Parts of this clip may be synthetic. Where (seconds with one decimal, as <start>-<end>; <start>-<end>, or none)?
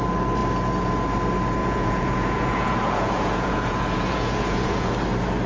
1.6-4.9